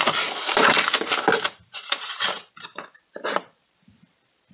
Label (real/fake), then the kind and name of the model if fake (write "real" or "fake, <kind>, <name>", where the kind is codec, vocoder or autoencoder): fake, vocoder, BigVGAN v2